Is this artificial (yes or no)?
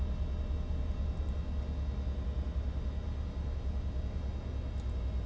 no